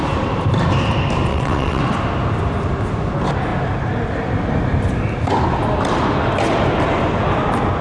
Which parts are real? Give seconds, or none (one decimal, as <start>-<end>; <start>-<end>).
0.0-1.3; 1.8-7.8